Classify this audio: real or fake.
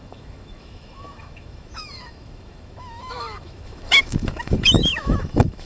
fake